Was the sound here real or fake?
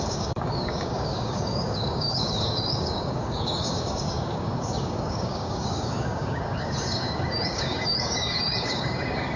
fake